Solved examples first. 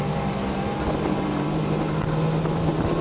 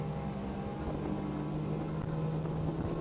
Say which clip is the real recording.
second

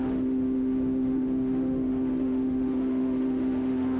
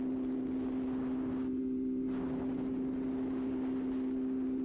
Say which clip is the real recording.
second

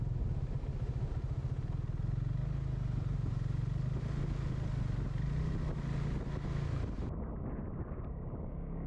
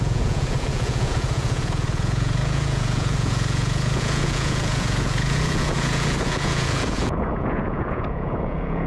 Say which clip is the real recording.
first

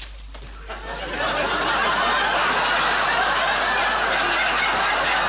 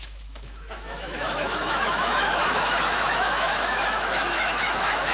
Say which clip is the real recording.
first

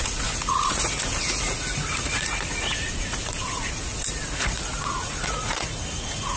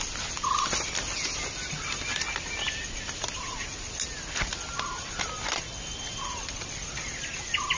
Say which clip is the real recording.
second